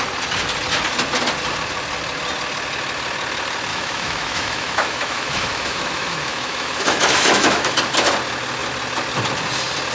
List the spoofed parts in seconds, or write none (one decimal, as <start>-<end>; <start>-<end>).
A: 3.7-7.7